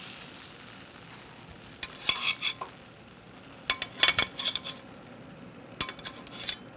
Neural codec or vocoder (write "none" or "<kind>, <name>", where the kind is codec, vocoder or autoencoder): none